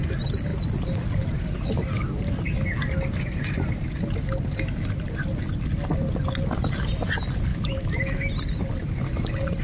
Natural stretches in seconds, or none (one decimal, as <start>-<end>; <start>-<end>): 0.0-7.5; 8.3-9.6